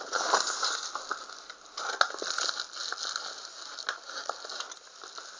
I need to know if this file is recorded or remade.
recorded